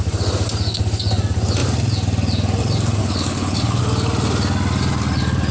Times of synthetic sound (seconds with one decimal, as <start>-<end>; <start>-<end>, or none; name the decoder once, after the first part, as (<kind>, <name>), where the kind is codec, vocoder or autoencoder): 3.0-3.8 (codec, HILCodec)